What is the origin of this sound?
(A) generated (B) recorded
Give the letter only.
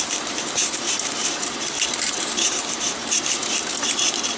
A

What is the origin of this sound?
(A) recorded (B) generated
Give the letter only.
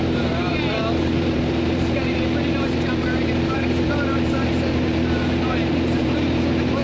B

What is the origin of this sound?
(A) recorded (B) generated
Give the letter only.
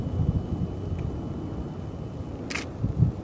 A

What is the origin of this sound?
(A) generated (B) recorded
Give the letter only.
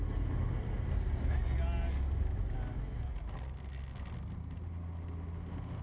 B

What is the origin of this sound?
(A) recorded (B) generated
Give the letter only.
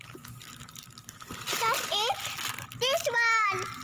A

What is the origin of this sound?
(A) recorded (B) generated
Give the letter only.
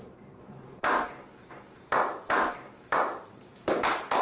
B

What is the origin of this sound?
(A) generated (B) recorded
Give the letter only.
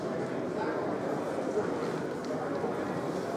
A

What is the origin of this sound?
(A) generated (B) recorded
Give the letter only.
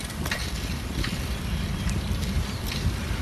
A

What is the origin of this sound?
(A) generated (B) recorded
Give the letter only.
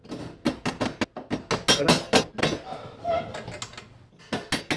B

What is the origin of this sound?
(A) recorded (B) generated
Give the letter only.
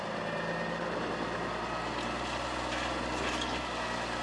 A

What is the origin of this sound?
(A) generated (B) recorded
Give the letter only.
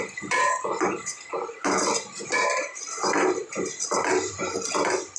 A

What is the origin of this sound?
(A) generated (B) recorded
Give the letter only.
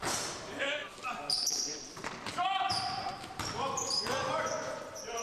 A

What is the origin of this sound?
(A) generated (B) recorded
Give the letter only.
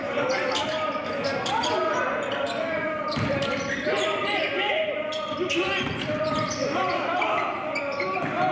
A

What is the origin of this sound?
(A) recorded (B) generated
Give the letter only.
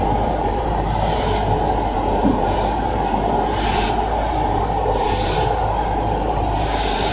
B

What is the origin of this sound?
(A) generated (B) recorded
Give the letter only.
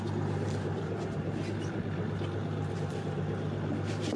B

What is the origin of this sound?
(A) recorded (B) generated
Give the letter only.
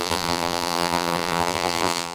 B